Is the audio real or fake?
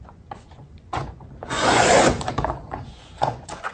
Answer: fake